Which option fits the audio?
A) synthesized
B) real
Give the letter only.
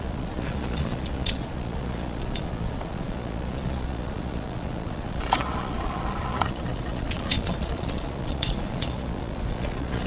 A